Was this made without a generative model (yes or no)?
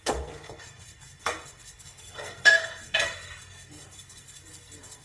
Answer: no